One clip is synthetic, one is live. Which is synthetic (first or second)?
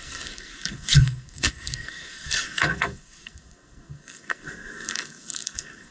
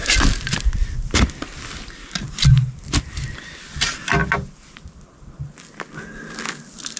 first